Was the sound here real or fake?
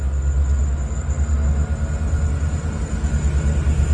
real